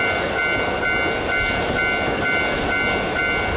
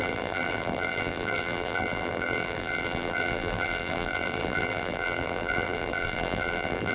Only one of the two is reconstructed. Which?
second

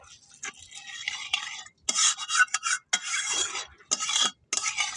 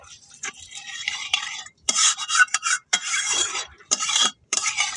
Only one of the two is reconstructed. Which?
second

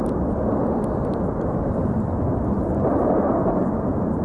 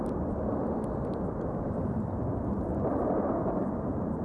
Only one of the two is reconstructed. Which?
second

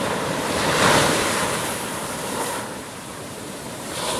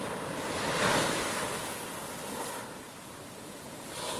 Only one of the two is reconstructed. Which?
first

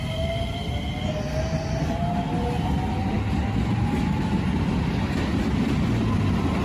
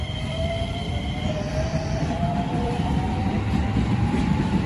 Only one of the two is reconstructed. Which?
second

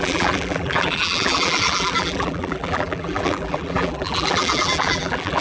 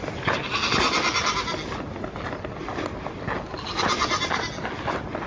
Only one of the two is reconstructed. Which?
first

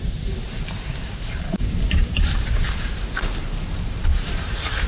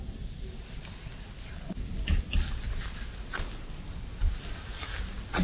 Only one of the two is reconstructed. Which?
first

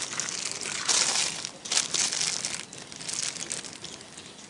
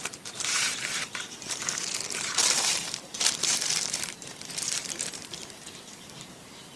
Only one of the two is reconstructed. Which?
second